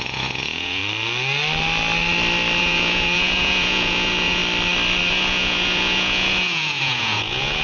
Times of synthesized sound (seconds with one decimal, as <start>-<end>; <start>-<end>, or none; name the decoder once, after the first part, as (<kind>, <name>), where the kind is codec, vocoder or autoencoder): 0.0-0.8 (vocoder, Vocos); 2.6-4.4; 5.1-7.6